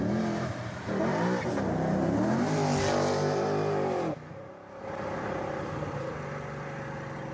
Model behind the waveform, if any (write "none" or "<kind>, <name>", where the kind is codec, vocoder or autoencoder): none